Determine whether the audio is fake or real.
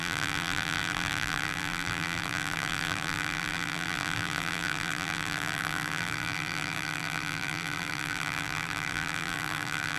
fake